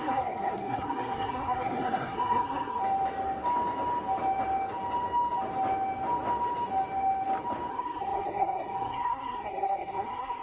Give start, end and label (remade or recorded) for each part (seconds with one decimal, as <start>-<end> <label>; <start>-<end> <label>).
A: 0.0-2.8 remade; 2.8-7.7 recorded; 7.7-10.4 remade